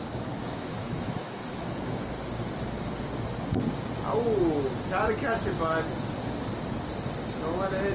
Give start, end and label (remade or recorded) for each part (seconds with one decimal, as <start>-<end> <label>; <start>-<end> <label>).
0.0-0.8 recorded; 0.8-2.0 remade; 2.0-7.9 recorded